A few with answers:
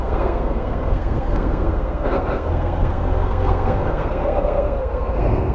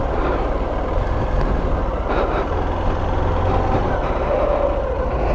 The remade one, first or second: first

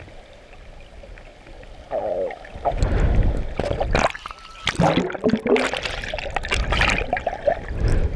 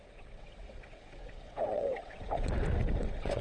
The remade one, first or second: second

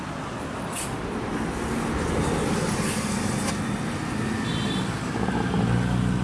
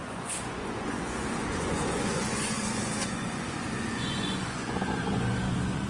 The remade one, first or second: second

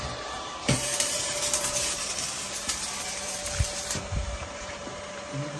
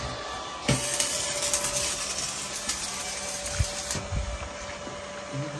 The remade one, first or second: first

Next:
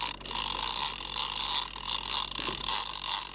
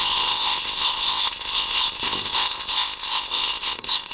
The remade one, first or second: second